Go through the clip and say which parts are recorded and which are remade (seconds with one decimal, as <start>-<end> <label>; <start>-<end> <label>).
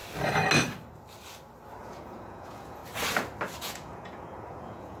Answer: 0.0-1.8 recorded; 1.8-2.8 remade; 2.8-3.6 recorded; 3.6-5.0 remade